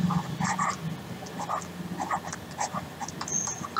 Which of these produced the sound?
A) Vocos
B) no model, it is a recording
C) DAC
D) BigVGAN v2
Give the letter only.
B